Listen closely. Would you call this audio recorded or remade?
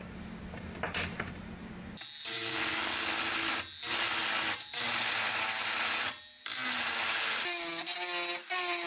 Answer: recorded